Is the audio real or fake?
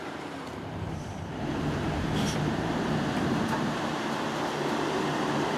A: fake